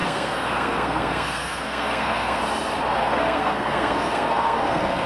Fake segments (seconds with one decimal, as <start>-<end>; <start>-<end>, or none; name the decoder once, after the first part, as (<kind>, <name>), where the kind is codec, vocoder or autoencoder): 0.0-2.4 (codec, SNAC); 3.0-5.1

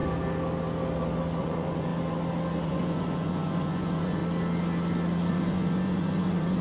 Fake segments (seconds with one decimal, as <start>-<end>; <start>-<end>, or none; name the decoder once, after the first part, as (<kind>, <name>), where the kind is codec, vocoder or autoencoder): 1.4-1.9 (vocoder, Vocos); 2.6-4.2; 5.3-6.6

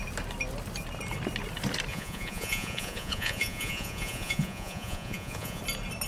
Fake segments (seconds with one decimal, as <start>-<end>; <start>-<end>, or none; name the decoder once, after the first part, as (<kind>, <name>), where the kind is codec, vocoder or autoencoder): 1.9-5.6 (vocoder, Vocos)

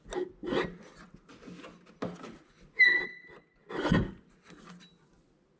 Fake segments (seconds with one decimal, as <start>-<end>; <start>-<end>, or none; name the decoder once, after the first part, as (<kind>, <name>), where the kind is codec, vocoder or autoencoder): none

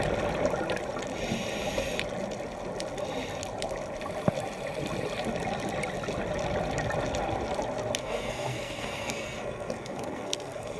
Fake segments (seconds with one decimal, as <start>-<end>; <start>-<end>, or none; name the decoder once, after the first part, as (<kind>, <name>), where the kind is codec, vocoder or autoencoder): 8.0-10.8 (codec, SNAC)